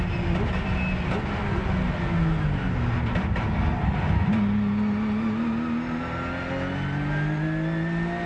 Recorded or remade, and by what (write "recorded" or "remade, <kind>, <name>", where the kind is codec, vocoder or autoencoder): recorded